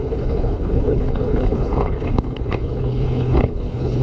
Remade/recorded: remade